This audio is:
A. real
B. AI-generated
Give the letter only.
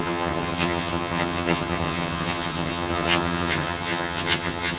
B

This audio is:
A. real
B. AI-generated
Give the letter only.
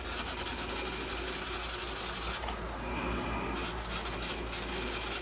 A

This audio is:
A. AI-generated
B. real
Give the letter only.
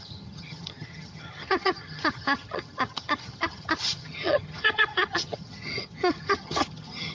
A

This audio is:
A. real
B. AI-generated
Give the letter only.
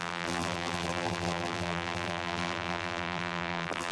B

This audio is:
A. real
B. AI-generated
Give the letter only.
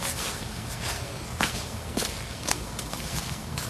B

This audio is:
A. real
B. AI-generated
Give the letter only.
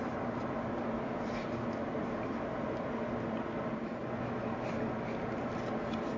A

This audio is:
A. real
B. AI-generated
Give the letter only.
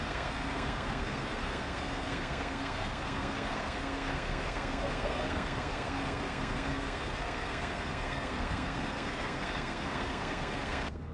B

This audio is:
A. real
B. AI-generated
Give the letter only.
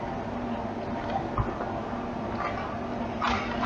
A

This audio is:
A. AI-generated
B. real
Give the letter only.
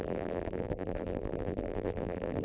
A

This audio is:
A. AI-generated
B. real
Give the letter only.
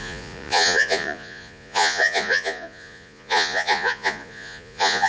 A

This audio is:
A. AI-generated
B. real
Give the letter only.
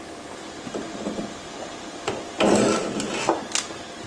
B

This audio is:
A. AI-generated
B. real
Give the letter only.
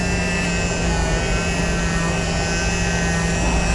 B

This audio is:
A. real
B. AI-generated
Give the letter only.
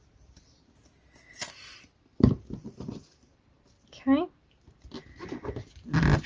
A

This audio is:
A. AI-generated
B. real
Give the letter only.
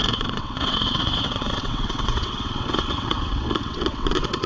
A